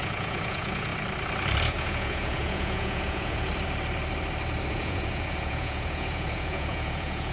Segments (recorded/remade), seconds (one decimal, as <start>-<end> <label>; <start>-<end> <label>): 0.0-0.9 remade; 0.9-1.6 recorded; 1.6-3.5 remade; 3.5-4.7 recorded; 4.7-7.3 remade